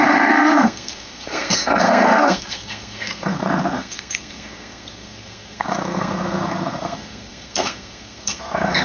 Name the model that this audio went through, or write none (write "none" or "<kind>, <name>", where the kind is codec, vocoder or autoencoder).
codec, SNAC